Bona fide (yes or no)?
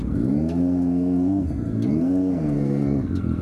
no